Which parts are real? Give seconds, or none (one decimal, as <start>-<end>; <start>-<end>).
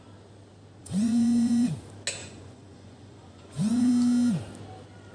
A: 0.0-0.8; 1.7-2.2; 3.9-5.1